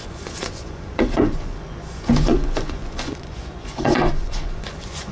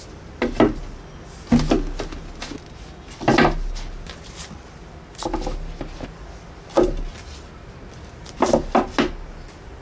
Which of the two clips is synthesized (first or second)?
first